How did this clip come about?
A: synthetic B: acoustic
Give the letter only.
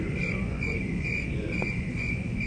A